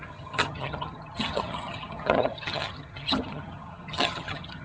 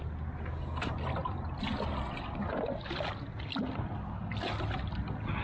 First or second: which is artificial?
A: first